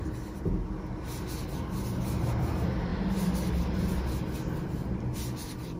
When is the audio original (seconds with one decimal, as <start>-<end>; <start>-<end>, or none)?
0.0-5.8

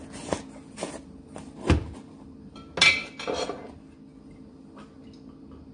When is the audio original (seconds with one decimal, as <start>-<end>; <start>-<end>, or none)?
0.0-5.7

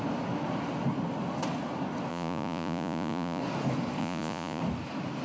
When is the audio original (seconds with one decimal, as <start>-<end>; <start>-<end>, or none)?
0.0-2.1; 3.4-4.0; 4.6-5.2

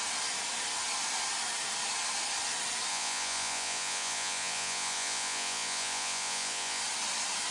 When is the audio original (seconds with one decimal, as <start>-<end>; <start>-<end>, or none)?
0.0-2.9; 6.8-7.5

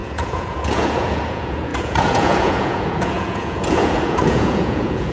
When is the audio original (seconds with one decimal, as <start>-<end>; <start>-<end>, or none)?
none